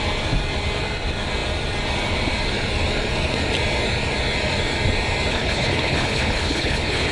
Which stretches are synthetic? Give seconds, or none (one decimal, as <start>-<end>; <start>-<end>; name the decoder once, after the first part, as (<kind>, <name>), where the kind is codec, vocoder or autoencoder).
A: 5.3-7.1 (codec, HILCodec)